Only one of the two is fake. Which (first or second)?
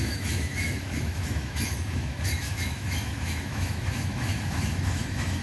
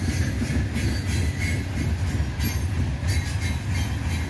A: first